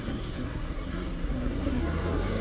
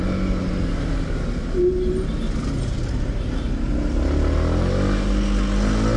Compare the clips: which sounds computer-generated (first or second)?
first